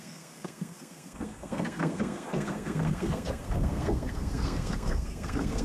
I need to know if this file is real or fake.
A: fake